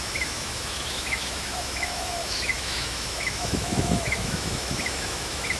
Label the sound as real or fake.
fake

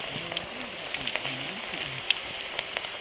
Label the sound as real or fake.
real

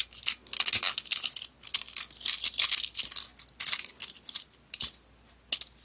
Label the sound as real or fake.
real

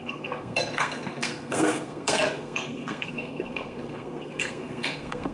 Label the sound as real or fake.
fake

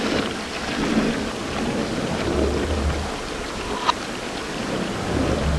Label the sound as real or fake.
fake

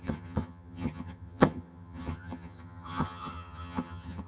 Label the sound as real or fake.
fake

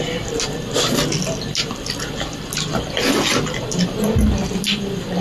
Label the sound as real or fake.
real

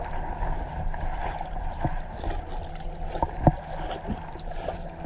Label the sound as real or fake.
real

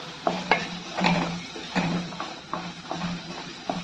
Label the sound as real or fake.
fake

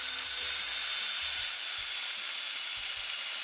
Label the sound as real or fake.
fake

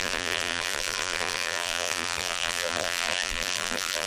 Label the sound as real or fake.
fake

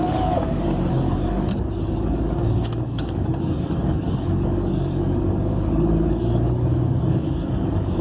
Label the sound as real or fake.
fake